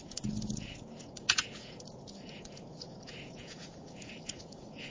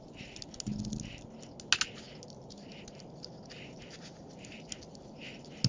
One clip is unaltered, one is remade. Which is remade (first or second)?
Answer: first